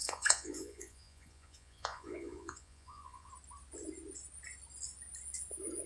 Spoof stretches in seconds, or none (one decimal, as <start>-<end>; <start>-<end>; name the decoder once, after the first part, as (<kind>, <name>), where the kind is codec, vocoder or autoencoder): 0.0-3.3 (vocoder, Vocos)